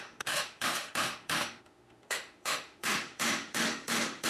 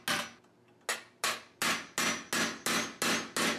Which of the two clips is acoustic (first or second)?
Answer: second